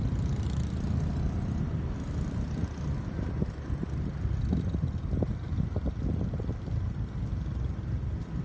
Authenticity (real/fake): real